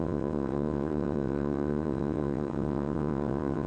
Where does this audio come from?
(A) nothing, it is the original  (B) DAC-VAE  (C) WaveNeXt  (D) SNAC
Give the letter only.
C